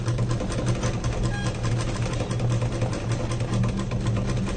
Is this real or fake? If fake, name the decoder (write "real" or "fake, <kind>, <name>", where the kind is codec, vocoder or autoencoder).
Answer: real